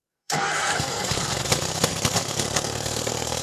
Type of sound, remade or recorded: remade